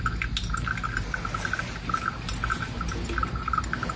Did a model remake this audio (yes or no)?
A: no